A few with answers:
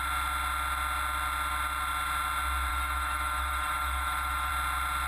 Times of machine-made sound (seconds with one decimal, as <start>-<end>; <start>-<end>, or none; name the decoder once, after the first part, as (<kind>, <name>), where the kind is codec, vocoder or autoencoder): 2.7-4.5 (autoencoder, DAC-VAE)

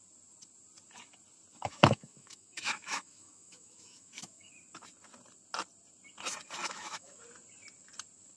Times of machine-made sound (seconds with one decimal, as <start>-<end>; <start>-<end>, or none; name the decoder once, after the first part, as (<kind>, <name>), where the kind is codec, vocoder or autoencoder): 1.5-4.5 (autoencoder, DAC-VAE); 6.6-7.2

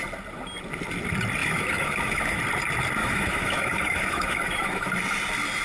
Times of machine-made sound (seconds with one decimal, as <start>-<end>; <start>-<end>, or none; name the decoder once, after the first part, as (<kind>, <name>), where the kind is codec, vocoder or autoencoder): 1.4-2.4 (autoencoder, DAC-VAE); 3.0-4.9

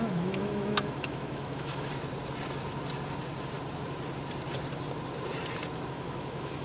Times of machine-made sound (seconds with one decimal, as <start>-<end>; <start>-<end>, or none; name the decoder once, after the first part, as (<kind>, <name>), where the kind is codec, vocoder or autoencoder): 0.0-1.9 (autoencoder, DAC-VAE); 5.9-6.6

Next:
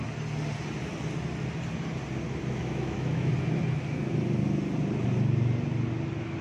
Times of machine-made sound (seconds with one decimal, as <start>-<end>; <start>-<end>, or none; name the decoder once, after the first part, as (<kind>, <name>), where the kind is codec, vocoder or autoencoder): 2.6-3.3 (autoencoder, DAC-VAE)